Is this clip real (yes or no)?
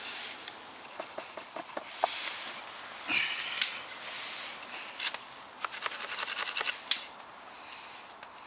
yes